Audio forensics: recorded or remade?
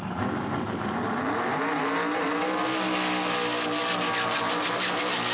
recorded